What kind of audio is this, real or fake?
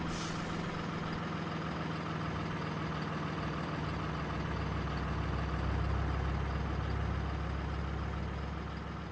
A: real